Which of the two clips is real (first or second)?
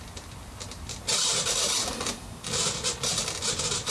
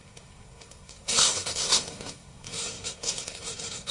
first